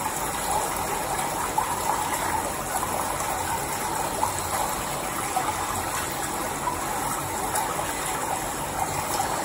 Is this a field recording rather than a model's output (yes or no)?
yes